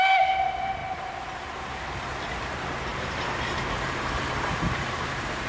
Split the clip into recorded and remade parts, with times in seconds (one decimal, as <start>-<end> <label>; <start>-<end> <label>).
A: 0.0-0.8 recorded; 0.8-1.7 remade; 1.7-2.9 recorded; 2.9-5.5 remade